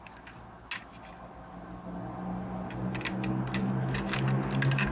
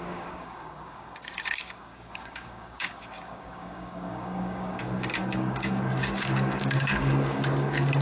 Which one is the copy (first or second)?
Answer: second